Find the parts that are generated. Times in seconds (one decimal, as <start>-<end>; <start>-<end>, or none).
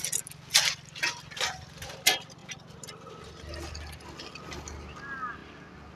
none